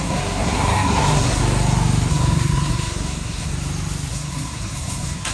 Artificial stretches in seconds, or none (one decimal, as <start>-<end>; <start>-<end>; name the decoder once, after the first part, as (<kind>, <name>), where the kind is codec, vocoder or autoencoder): 0.0-1.4 (codec, SNAC); 2.1-3.5; 4.1-5.3